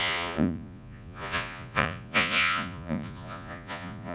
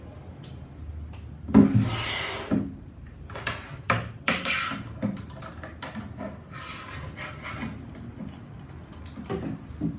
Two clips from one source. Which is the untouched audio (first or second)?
second